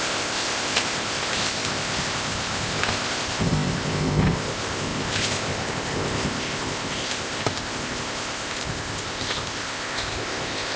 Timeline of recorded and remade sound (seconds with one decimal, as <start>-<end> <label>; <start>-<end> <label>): 0.0-10.8 remade